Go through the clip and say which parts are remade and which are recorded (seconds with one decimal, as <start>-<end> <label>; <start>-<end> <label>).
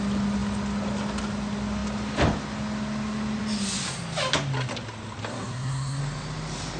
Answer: 0.0-5.3 recorded; 5.3-6.0 remade; 6.0-6.8 recorded